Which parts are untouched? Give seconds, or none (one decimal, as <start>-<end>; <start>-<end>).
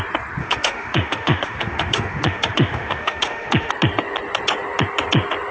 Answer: 0.0-0.4; 3.7-5.5